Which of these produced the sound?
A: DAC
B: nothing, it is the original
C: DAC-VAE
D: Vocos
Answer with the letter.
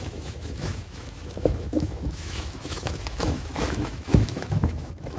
C